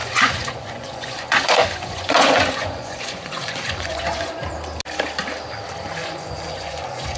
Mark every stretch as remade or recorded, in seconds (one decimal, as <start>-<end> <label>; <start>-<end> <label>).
0.0-4.3 remade; 4.3-6.0 recorded; 6.0-7.2 remade